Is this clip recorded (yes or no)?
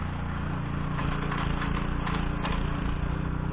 yes